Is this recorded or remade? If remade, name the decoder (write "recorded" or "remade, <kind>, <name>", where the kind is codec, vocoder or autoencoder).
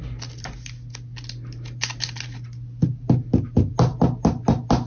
recorded